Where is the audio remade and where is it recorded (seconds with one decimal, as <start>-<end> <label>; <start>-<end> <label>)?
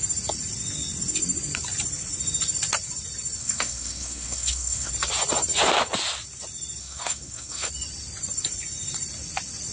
0.0-3.4 recorded; 3.4-4.9 remade; 4.9-6.8 recorded; 6.8-7.7 remade; 7.7-9.7 recorded